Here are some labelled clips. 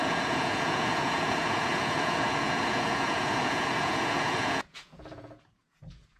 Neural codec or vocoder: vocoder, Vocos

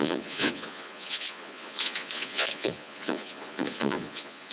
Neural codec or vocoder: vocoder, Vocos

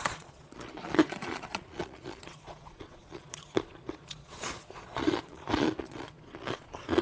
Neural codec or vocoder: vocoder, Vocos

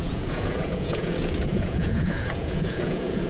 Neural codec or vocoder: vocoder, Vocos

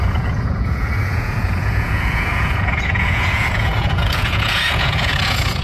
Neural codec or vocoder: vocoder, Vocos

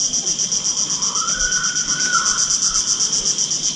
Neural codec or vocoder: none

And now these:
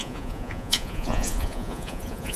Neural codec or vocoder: vocoder, Vocos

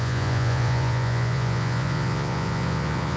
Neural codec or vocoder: vocoder, Vocos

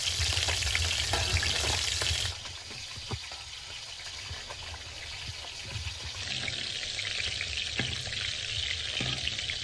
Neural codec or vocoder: none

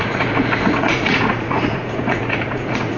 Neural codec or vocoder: vocoder, Vocos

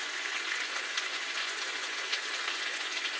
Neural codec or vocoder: vocoder, Vocos